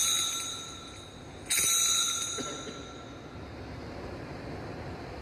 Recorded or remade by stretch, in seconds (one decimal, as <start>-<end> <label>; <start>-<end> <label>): 0.0-5.2 recorded